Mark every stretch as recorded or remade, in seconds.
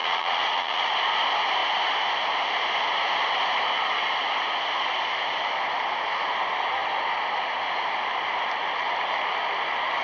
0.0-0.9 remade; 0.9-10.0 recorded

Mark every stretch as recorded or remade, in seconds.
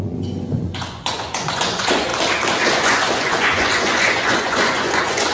0.0-2.1 remade; 2.1-2.7 recorded; 2.7-5.3 remade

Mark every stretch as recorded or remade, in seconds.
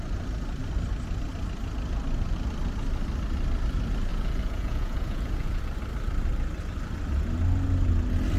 0.0-4.1 recorded; 4.1-5.6 remade; 5.6-8.4 recorded